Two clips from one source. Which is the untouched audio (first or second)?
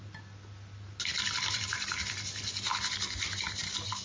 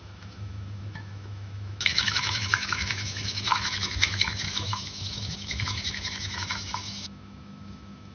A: first